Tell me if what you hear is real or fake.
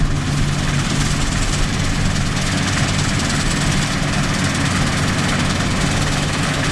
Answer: real